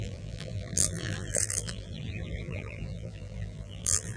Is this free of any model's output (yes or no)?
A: no